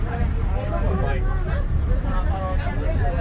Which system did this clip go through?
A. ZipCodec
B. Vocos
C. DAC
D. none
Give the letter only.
D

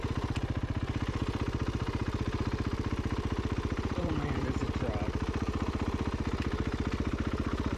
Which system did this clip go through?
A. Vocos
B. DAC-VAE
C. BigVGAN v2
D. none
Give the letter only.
C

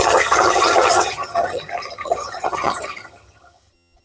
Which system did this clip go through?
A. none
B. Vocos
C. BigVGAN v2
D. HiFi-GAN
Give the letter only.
D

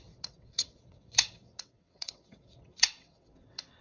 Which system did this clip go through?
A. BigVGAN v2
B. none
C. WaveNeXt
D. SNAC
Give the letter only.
C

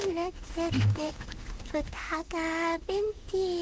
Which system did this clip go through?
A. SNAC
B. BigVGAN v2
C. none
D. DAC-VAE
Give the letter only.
D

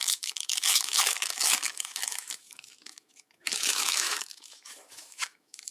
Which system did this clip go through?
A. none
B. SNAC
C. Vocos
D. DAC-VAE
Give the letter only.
D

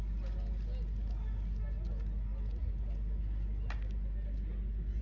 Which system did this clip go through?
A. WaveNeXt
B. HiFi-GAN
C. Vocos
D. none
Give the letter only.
D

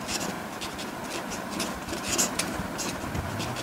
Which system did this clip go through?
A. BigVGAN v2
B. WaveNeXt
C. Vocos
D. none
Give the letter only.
D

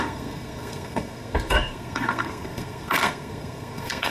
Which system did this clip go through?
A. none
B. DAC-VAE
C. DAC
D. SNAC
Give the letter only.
D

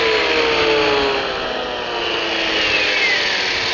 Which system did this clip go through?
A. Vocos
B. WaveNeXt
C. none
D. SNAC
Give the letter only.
C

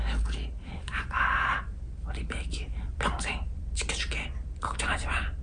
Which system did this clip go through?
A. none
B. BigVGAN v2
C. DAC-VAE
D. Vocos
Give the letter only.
A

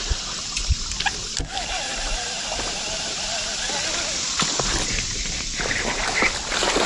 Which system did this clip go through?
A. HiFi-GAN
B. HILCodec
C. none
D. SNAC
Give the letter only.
C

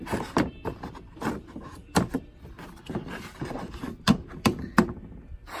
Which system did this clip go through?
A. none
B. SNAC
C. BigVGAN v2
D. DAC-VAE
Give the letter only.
C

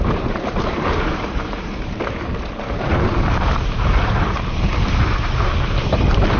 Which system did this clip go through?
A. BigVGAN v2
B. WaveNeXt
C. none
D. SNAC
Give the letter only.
A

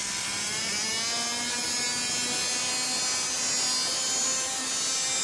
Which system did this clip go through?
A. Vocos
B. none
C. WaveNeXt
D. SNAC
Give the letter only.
B